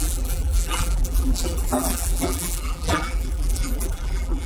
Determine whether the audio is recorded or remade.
remade